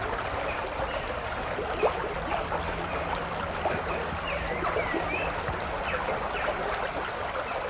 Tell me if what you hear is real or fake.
real